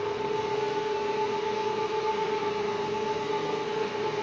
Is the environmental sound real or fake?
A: fake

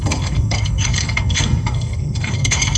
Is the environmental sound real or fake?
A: fake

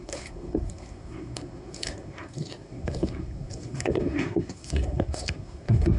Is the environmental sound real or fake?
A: fake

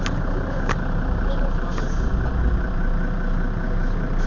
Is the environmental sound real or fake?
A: real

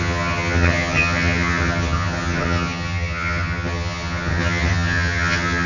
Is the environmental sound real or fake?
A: fake